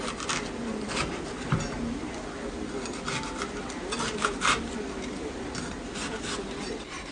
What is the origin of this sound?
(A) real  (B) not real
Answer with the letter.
A